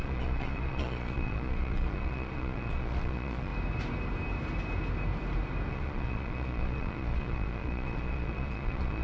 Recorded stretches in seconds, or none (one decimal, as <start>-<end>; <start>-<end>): 3.5-5.7